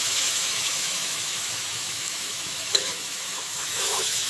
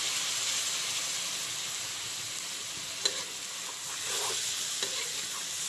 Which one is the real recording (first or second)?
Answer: second